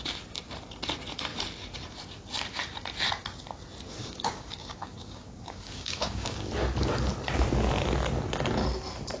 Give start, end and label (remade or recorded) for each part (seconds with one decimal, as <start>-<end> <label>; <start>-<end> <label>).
0.0-4.0 recorded; 4.0-6.5 remade; 6.5-9.2 recorded